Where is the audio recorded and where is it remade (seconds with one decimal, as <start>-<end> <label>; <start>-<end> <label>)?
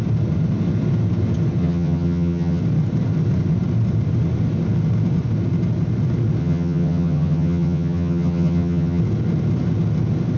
0.0-1.6 recorded; 1.6-2.6 remade; 2.6-6.4 recorded; 6.4-9.0 remade; 9.0-10.4 recorded